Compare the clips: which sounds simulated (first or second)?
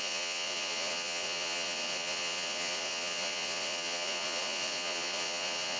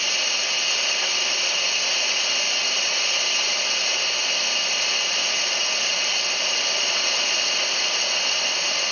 first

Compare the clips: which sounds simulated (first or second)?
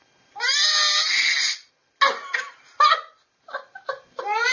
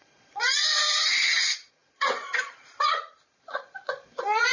second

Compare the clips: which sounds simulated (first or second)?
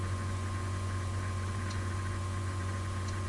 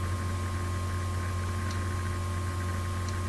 first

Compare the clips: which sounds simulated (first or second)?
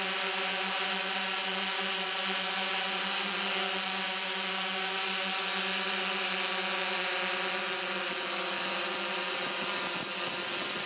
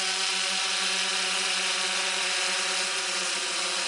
second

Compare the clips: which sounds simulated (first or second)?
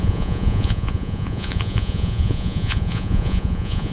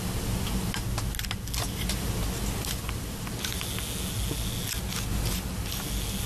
first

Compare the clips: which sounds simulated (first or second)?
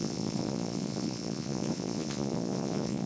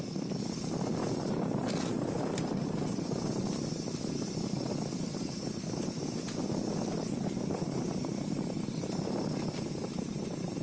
first